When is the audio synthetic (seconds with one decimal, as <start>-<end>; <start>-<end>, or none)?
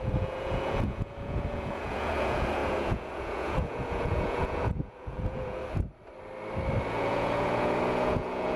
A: 0.0-5.6; 6.9-8.6